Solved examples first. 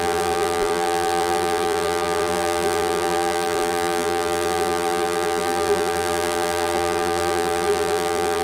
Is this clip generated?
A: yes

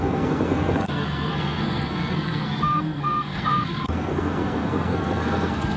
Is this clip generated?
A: yes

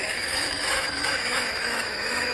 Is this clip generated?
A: yes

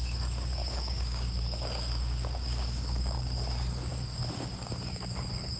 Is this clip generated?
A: yes